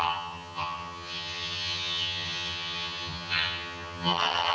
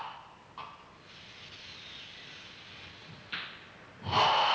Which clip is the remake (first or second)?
first